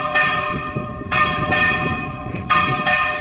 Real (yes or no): no